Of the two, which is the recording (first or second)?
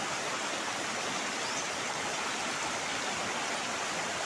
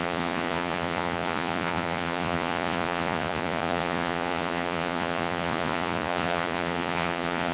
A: first